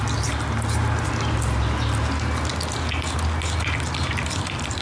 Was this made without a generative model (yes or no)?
yes